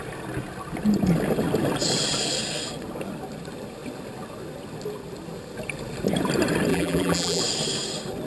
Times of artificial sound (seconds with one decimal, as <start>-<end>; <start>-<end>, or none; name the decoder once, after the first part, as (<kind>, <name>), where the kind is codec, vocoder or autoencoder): 6.7-7.4 (vocoder, BigVGAN v2)